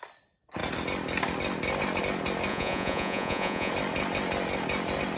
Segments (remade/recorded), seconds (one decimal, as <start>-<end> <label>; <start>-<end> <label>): 0.0-2.5 recorded; 2.5-3.7 remade; 3.7-5.2 recorded